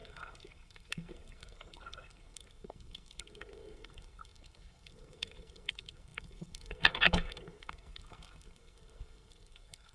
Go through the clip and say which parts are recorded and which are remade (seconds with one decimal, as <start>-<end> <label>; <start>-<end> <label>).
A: 0.0-9.9 remade